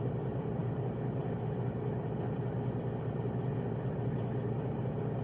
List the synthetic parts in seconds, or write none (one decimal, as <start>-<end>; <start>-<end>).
none